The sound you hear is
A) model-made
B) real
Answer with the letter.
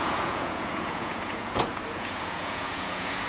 A